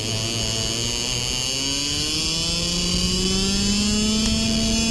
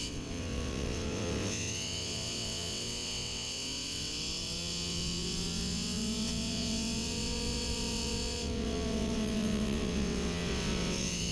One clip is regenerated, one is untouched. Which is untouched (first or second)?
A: first